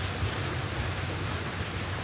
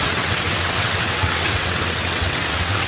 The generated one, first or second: second